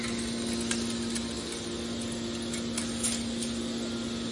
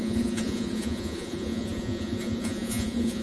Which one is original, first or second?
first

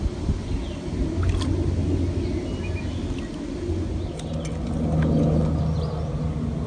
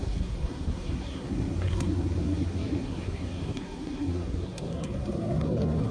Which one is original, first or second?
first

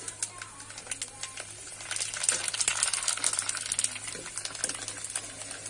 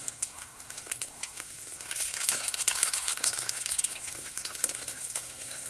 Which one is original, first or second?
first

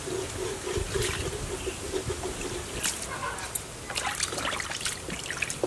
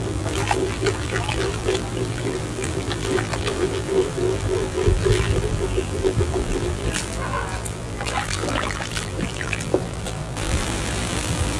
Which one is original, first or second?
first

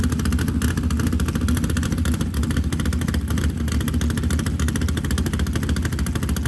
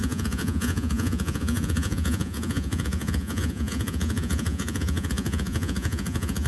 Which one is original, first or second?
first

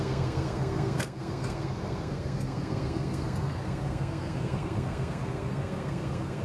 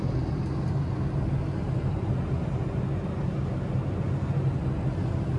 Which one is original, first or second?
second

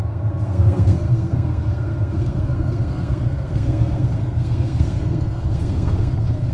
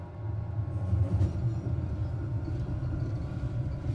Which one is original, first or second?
second